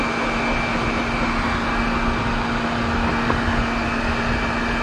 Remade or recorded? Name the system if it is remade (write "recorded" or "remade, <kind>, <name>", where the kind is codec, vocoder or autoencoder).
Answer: recorded